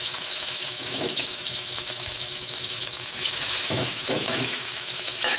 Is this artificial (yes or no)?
yes